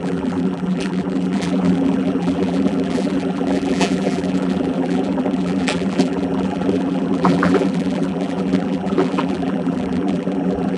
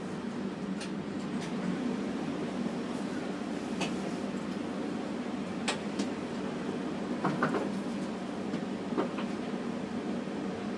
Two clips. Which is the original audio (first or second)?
second